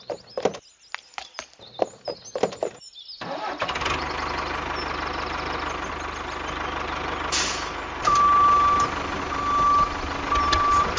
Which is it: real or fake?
real